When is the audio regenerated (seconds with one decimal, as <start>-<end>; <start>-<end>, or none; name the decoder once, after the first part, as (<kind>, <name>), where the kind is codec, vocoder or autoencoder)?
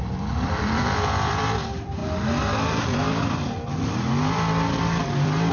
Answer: 0.0-2.0 (vocoder, BigVGAN v2); 2.8-5.5